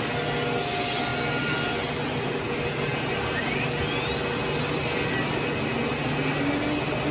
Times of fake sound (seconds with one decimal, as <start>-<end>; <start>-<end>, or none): none